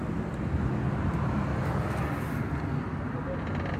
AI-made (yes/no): no